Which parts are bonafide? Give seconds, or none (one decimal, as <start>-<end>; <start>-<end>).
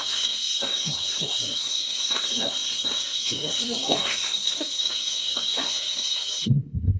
none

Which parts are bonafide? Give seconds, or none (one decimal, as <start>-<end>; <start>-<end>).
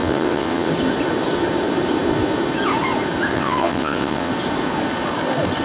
0.7-3.3; 4.3-5.6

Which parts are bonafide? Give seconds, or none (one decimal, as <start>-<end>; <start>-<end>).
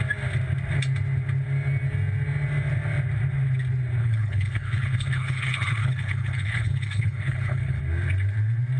0.0-4.0; 7.8-8.8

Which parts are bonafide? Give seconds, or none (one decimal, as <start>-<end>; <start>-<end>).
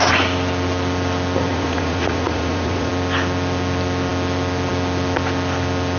0.0-1.5; 2.9-6.0